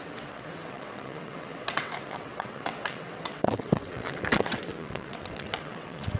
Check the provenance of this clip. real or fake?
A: fake